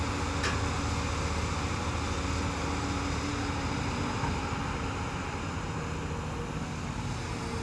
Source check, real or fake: real